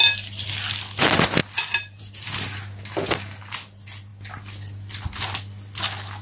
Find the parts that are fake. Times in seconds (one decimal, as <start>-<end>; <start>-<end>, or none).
none